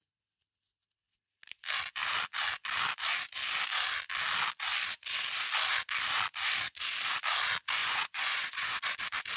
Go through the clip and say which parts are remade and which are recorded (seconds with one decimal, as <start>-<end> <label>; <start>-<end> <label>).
0.0-7.8 recorded; 7.8-9.0 remade; 9.0-9.4 recorded